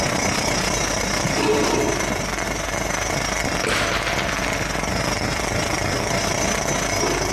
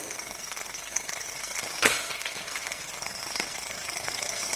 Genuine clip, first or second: first